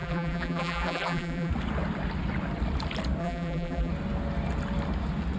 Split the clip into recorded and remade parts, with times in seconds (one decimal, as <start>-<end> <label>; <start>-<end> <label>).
0.0-1.5 remade; 1.5-3.2 recorded; 3.2-3.9 remade; 3.9-5.4 recorded